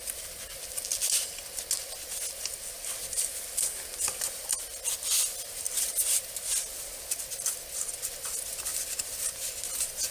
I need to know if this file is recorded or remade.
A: recorded